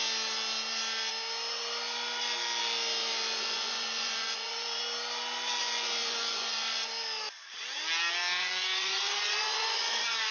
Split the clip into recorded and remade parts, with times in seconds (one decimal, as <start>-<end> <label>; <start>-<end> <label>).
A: 0.0-3.4 recorded; 3.4-4.8 remade; 4.8-5.6 recorded; 5.6-6.9 remade; 6.9-8.4 recorded; 8.4-10.3 remade